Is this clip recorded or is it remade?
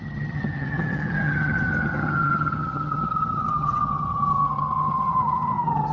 remade